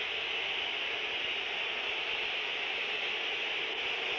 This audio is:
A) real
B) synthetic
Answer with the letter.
A